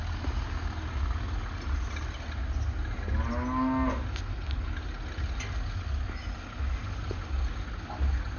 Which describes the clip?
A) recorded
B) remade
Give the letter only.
A